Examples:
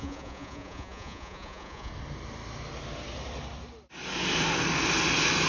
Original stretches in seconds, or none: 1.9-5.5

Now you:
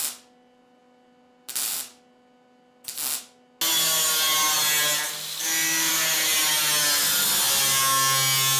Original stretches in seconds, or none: 0.0-8.6

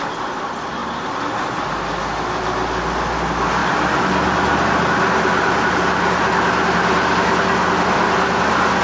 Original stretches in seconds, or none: 0.0-8.8

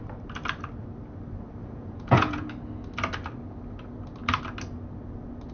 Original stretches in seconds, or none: 0.0-1.6; 2.5-5.5

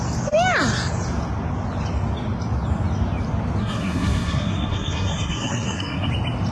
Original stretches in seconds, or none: 0.0-3.6; 6.1-6.5

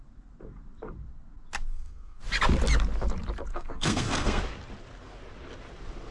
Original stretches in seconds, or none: 0.0-1.7; 2.2-3.5; 4.4-6.1